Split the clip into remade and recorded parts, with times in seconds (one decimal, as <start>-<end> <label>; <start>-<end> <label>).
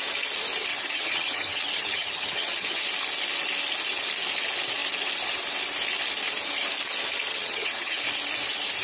0.0-0.7 recorded; 0.7-2.8 remade; 2.8-7.3 recorded; 7.3-8.0 remade; 8.0-8.8 recorded